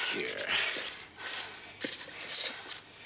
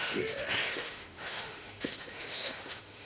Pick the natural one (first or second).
first